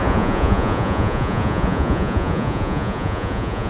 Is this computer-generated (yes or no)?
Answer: yes